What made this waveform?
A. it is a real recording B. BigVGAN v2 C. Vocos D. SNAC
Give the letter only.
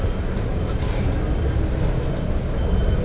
B